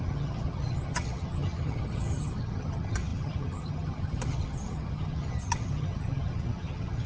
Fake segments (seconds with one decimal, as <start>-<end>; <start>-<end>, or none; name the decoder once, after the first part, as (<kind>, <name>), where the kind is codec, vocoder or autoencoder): 0.0-7.1 (vocoder, HiFi-GAN)